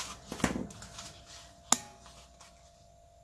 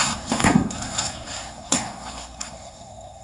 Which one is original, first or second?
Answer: first